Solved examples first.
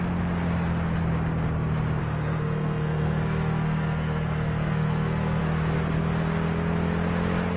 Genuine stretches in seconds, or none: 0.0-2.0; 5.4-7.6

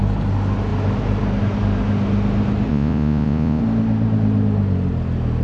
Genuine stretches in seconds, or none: 0.0-2.7; 3.6-5.4

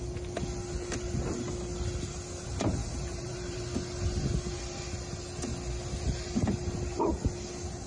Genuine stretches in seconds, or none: 0.0-2.8; 3.6-7.9